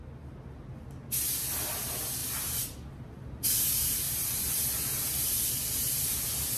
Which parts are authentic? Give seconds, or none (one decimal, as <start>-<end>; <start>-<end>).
0.0-2.2